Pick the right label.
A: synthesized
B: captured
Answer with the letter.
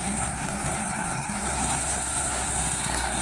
A